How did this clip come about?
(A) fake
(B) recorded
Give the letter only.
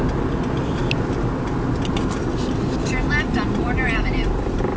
B